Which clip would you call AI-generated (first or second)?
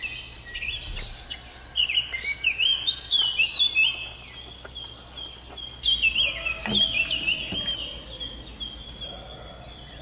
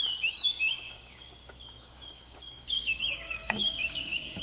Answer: second